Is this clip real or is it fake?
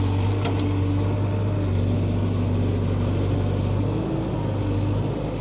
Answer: real